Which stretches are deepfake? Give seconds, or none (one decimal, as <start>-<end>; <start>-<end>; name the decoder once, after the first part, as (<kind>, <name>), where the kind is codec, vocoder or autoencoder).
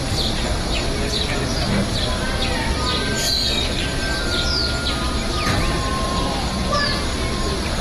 none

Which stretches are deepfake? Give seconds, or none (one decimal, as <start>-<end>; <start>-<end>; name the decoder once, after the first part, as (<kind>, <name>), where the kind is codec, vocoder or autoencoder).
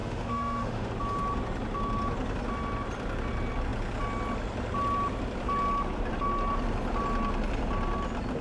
0.0-0.9 (autoencoder, DAC-VAE)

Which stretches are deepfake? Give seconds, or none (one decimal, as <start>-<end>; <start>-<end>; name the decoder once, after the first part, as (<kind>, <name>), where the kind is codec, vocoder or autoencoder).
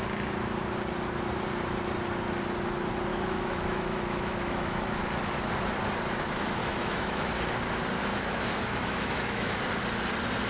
3.1-5.0 (autoencoder, DAC-VAE); 6.6-7.3; 8.1-9.6